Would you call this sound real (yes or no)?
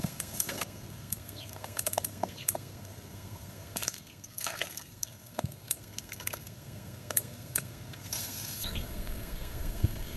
no